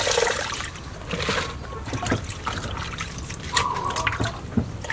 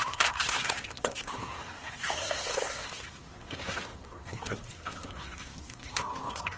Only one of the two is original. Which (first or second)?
first